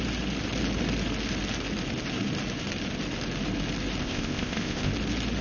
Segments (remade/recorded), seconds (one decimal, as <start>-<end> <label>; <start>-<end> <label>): 0.0-4.0 recorded; 4.0-4.9 remade; 4.9-5.4 recorded